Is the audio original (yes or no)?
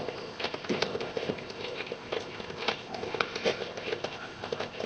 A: no